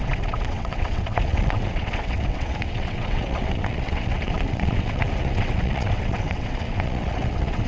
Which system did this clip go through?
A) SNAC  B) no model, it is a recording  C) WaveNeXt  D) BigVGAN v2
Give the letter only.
C